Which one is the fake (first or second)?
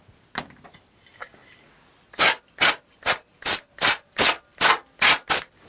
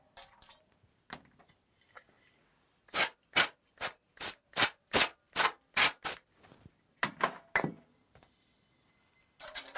second